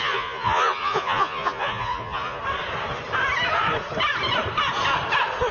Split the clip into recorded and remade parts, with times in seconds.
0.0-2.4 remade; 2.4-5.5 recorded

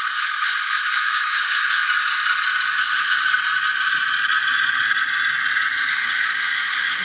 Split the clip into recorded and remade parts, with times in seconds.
0.0-1.9 remade; 1.9-2.8 recorded; 2.8-3.3 remade; 3.3-5.9 recorded; 5.9-7.0 remade